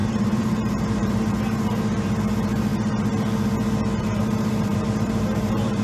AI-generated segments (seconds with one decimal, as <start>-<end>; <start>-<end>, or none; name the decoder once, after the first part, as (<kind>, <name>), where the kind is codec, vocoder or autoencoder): 0.0-2.7 (vocoder, BigVGAN v2); 4.0-5.8